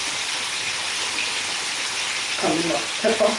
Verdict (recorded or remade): recorded